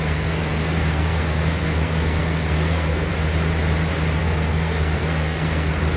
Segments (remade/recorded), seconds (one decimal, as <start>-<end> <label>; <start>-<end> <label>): 0.0-3.1 remade; 3.1-4.2 recorded; 4.2-6.0 remade